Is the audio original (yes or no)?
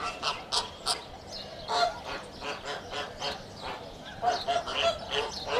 yes